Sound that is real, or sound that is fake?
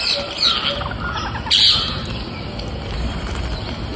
real